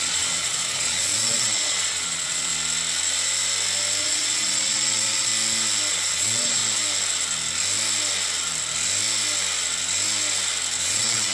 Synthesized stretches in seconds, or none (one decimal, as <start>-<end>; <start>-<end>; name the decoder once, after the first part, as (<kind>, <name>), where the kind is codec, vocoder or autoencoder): 0.0-2.5 (vocoder, Vocos); 4.0-5.3; 5.9-6.6; 10.8-11.3